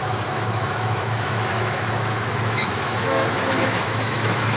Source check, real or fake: fake